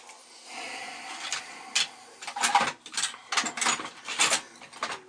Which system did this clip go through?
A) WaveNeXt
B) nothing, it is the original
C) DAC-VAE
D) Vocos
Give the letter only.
B